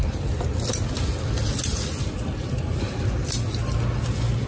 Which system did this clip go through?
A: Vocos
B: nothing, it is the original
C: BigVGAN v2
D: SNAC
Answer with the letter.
B